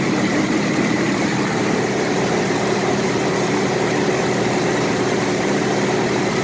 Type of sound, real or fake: fake